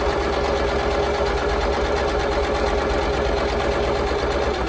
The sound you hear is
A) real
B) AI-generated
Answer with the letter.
A